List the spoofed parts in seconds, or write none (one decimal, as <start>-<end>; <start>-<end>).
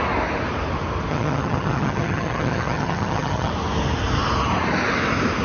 1.1-3.5